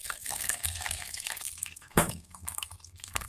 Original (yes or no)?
no